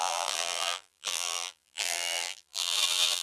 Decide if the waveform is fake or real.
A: fake